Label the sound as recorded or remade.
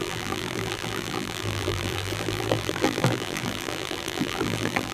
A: remade